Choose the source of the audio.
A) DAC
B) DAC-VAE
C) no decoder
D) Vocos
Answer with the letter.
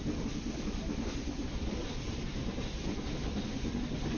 C